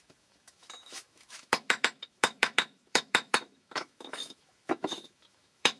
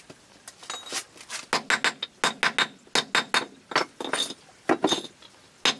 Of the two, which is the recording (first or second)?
second